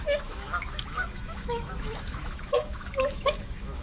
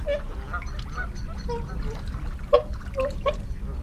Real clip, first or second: second